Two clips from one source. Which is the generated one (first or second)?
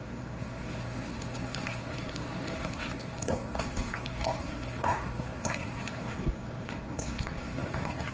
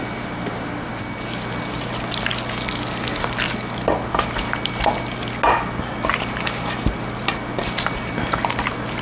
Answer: first